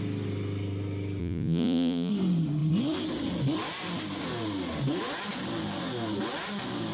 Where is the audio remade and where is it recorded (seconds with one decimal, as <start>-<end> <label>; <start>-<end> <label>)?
0.0-1.2 recorded; 1.2-2.1 remade; 2.1-6.9 recorded